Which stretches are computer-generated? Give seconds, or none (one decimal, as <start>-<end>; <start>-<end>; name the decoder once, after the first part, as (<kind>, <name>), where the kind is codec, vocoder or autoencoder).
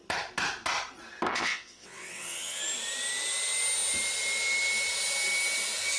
1.3-2.6 (vocoder, WaveNeXt)